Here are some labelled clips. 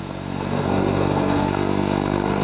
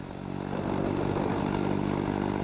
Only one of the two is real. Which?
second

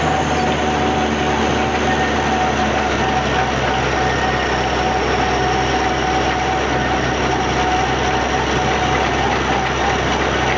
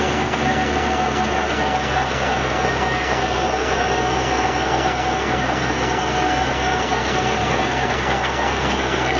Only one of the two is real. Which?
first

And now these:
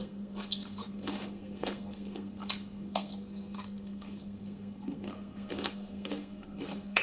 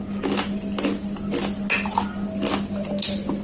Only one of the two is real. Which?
second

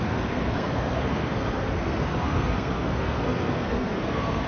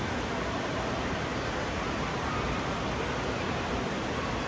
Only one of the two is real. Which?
second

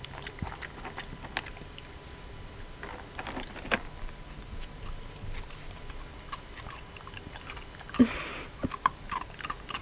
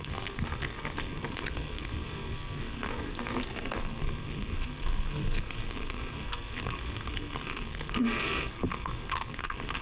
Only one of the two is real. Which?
first